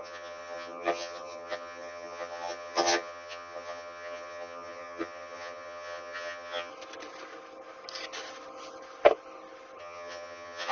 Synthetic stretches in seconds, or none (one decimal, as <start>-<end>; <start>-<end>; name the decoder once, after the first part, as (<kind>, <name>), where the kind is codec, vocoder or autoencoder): 0.0-6.7 (vocoder, HiFi-GAN); 9.8-10.7

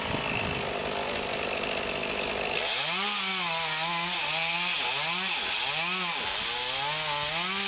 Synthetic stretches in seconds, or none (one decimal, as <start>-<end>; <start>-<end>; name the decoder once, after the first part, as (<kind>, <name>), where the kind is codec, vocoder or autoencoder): none

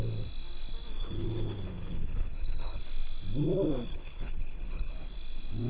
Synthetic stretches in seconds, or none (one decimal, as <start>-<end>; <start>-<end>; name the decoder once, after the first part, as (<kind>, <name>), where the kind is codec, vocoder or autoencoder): 1.0-2.8 (codec, HILCodec); 3.9-4.9

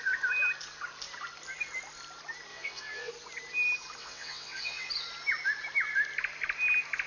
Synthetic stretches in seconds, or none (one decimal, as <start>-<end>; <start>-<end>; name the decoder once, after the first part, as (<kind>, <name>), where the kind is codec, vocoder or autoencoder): 2.5-3.1 (vocoder, WaveNeXt); 4.0-4.9

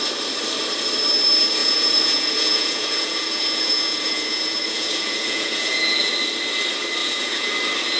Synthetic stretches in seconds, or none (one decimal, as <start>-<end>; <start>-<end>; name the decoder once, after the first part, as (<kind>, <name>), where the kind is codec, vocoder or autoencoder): 1.6-6.1 (vocoder, Vocos); 7.0-7.5